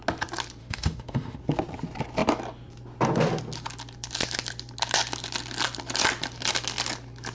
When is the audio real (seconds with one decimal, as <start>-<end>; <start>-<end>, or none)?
0.0-0.6; 1.4-7.3